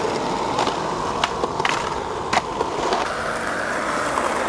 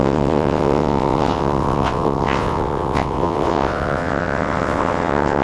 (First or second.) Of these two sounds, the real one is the first